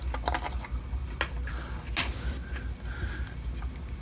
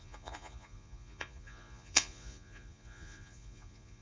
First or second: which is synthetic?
second